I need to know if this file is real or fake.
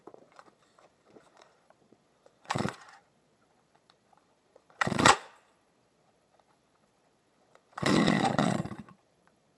fake